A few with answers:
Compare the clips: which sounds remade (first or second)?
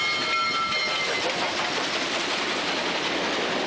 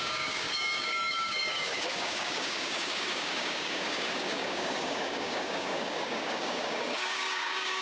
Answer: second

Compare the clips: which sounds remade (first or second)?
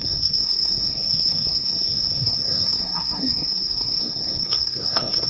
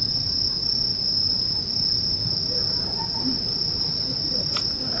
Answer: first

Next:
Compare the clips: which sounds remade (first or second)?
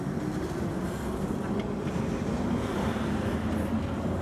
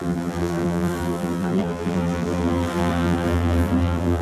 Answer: second